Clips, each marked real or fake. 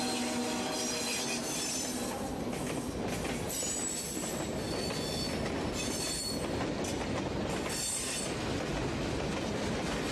real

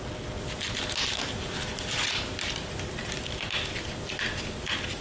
real